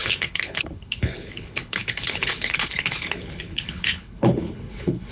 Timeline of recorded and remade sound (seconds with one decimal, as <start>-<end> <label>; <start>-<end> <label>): 0.0-5.1 remade